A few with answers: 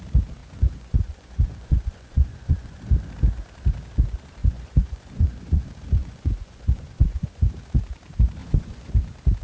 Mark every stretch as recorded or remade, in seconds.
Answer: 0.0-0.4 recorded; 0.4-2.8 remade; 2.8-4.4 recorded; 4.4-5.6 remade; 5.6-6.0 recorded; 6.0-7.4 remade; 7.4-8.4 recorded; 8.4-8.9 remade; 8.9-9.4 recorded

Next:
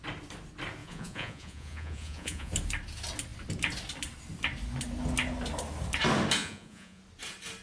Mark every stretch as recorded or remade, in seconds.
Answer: 0.0-0.8 recorded; 0.8-2.5 remade; 2.5-6.4 recorded; 6.4-7.0 remade; 7.0-7.6 recorded

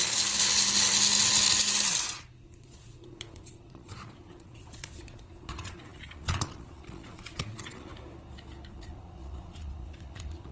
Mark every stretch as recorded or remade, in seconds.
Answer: 0.0-2.1 recorded; 2.1-7.9 remade; 7.9-8.7 recorded; 8.7-10.5 remade